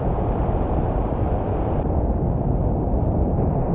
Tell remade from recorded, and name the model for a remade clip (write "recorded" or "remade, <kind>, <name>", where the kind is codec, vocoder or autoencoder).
recorded